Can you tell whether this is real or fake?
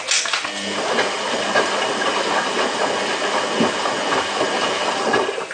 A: real